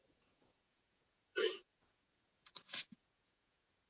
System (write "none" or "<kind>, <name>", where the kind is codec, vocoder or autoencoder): vocoder, Vocos